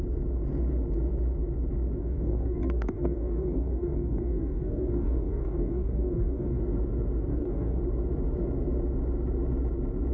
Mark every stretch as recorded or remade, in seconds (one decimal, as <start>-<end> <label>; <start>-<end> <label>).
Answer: 0.0-2.0 recorded; 2.0-6.6 remade; 6.6-7.3 recorded; 7.3-7.8 remade; 7.8-10.1 recorded

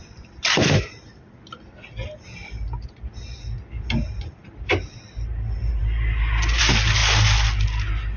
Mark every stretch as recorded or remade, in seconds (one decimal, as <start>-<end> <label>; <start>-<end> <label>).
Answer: 0.0-8.2 recorded

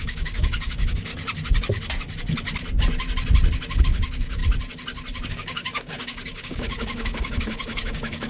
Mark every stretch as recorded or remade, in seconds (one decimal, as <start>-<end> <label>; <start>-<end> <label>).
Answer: 0.0-1.1 remade; 1.1-3.8 recorded; 3.8-4.4 remade; 4.4-5.3 recorded; 5.3-8.3 remade

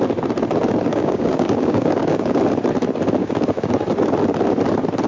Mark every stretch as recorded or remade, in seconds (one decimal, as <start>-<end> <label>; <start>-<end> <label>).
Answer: 0.0-0.9 recorded; 0.9-2.4 remade; 2.4-3.2 recorded; 3.2-3.7 remade; 3.7-5.1 recorded

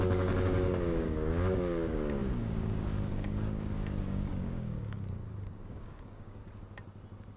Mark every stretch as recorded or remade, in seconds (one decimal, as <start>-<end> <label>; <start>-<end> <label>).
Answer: 0.0-6.4 remade; 6.4-7.4 recorded

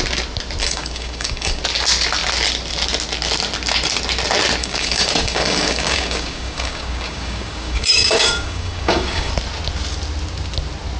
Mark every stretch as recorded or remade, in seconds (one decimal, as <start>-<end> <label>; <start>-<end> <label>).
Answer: 0.0-0.6 recorded; 0.6-1.6 remade; 1.6-4.6 recorded; 4.6-9.3 remade; 9.3-11.0 recorded

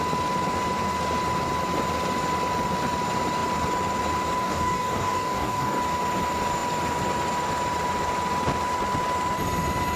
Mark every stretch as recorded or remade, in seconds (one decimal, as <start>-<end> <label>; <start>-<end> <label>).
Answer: 0.0-4.4 recorded; 4.4-5.8 remade; 5.8-10.0 recorded